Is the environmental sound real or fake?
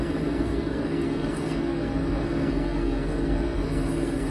fake